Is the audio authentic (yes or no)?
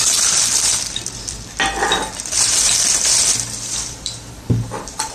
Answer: no